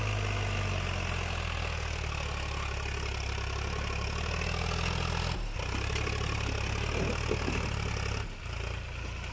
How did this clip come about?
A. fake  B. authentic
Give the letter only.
B